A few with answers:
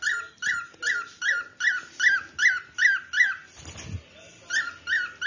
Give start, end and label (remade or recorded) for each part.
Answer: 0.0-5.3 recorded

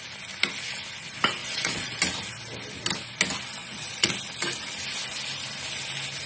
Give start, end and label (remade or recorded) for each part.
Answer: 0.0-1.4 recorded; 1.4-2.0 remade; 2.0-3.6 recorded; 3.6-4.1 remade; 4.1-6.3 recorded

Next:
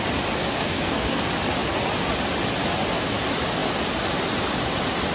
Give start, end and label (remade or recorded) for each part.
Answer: 0.0-0.4 recorded; 0.4-1.2 remade; 1.2-5.1 recorded

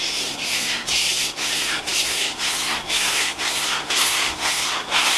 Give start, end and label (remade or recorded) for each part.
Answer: 0.0-5.2 remade